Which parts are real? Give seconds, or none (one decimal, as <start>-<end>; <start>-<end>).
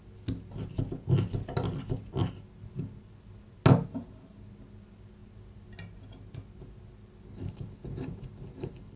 0.0-9.0